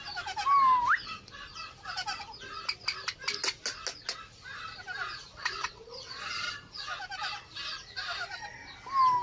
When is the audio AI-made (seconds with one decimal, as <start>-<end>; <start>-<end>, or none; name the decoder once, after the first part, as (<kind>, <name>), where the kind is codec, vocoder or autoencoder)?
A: 5.3-6.2 (vocoder, WaveNeXt)